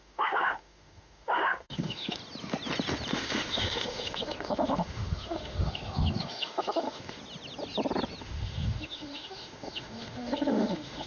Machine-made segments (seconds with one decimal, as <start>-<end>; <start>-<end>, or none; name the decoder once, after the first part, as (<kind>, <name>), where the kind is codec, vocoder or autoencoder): 0.0-2.2 (autoencoder, DAC-VAE); 3.1-7.2; 8.2-11.1